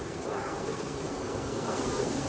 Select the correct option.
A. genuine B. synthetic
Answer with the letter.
B